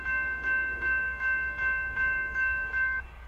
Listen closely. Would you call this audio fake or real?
fake